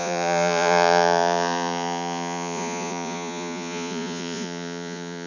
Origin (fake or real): fake